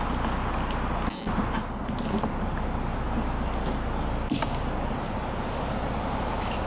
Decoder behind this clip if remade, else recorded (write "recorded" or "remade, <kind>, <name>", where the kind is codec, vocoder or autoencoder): recorded